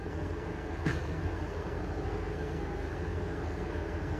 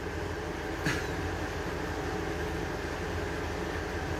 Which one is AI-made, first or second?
first